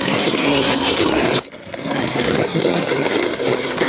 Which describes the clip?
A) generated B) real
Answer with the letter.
A